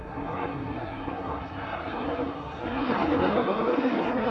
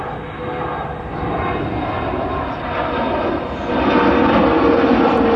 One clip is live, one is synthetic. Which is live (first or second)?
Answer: second